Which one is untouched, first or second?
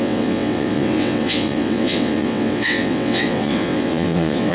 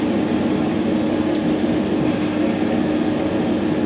second